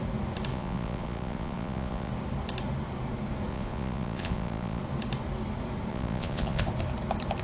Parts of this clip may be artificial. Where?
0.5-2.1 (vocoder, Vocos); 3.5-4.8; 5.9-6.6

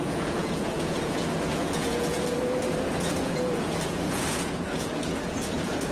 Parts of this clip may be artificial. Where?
0.0-5.9 (vocoder, Vocos)

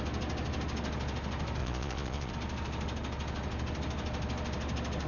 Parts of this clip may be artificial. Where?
1.6-2.3 (vocoder, Vocos)